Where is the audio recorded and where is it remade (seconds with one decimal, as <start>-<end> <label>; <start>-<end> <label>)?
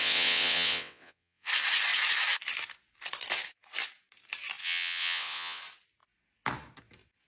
0.0-1.5 remade; 1.5-4.6 recorded; 4.6-5.6 remade; 5.6-7.3 recorded